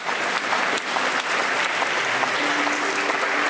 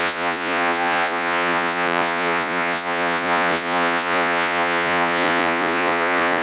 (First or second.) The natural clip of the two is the first